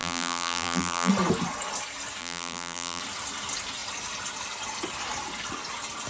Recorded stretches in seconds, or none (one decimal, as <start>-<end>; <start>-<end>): 1.1-2.2; 3.0-6.1